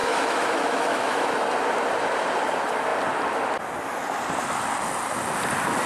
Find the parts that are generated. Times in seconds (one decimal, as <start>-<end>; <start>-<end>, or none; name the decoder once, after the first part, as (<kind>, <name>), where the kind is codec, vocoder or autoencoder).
0.0-1.3 (autoencoder, DAC-VAE)